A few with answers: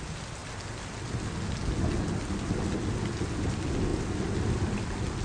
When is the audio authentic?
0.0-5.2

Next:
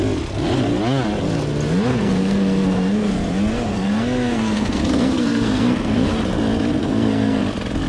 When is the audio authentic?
0.0-1.9; 3.1-3.5; 6.1-6.8; 7.4-7.9

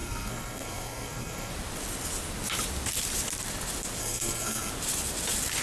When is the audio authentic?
1.5-4.0; 4.7-5.6

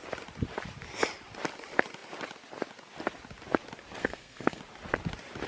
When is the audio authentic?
0.0-4.0; 4.6-5.5

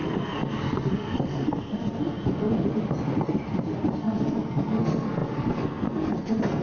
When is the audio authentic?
2.5-4.0

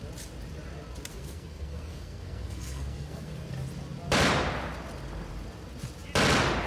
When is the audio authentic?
0.0-1.1; 3.5-6.7

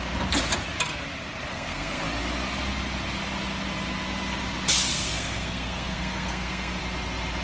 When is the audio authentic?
0.0-1.5; 2.0-4.9; 6.8-7.4

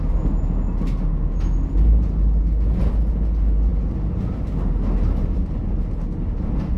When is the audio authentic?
0.0-6.8